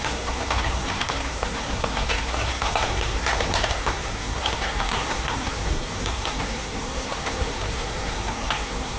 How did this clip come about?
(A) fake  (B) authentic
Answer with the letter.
A